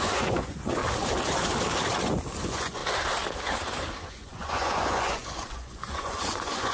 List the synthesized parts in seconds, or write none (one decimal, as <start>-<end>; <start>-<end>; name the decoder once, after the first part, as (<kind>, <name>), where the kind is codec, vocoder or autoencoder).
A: 0.0-0.8 (vocoder, Vocos); 2.4-2.8; 4.1-6.7